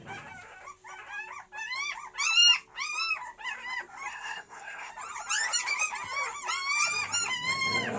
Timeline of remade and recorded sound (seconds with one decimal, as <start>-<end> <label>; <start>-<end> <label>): 0.0-4.1 recorded; 4.1-4.9 remade; 4.9-8.0 recorded